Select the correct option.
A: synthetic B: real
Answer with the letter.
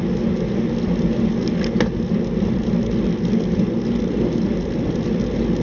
B